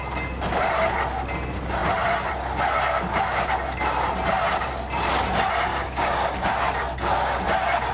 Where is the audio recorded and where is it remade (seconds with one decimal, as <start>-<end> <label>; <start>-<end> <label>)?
0.0-5.7 recorded; 5.7-6.5 remade; 6.5-7.9 recorded